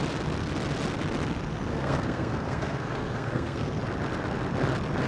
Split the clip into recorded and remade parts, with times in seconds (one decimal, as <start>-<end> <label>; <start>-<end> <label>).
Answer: 0.0-1.7 recorded; 1.7-3.8 remade; 3.8-5.1 recorded